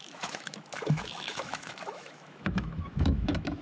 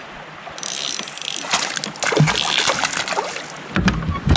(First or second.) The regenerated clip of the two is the first